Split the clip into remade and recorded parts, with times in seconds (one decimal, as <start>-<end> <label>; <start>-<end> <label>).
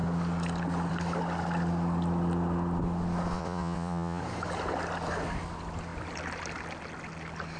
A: 0.0-3.3 recorded; 3.3-4.2 remade; 4.2-7.6 recorded